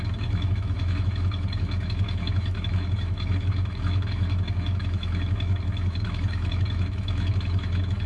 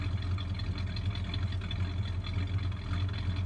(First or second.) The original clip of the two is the second